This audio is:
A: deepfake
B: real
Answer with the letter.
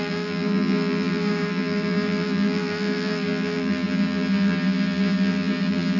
A